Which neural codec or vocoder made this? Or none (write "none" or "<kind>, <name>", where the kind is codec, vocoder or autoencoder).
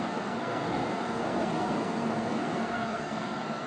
codec, SNAC